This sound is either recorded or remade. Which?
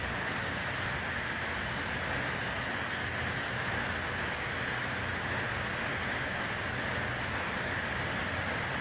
recorded